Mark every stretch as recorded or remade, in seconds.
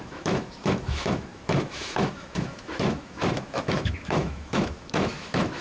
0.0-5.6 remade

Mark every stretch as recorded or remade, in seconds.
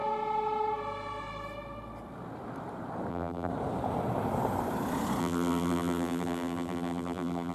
0.0-3.1 recorded; 3.1-3.5 remade; 3.5-5.2 recorded; 5.2-7.5 remade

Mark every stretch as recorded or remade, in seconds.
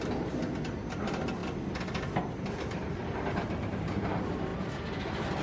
0.0-5.4 recorded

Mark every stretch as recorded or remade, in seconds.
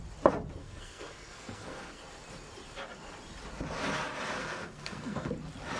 0.0-0.6 recorded; 0.6-2.0 remade; 2.0-4.4 recorded; 4.4-5.3 remade; 5.3-5.8 recorded